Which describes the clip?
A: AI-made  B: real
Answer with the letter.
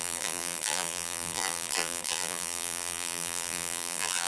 A